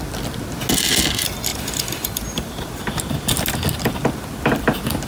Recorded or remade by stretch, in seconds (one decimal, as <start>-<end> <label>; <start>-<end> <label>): 0.0-1.5 recorded; 1.5-2.7 remade; 2.7-5.1 recorded